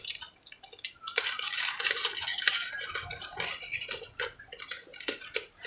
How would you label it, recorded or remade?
recorded